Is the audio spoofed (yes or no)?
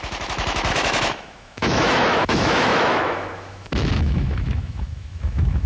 yes